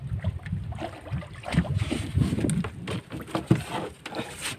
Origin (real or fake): real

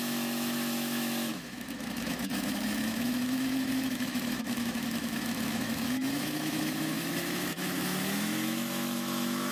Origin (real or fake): fake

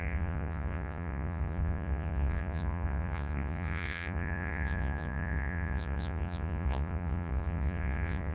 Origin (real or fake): fake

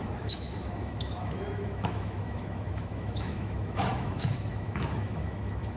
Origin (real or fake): fake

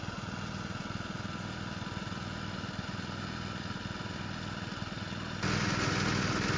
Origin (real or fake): real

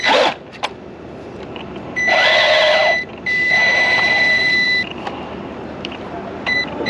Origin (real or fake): fake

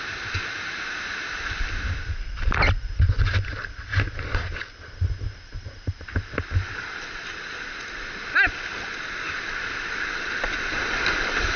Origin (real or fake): real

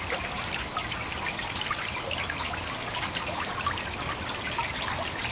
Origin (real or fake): real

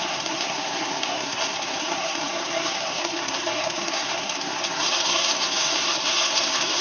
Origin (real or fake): fake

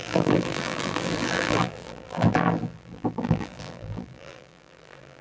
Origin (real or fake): fake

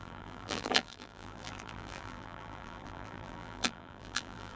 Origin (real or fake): fake